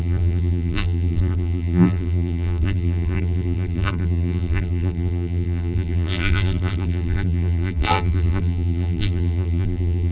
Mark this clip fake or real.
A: fake